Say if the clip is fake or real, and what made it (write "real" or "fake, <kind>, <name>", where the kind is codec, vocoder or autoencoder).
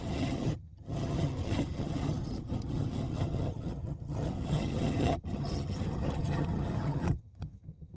fake, vocoder, HiFi-GAN